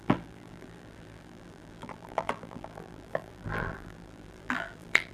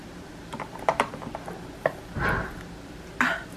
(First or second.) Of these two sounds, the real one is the second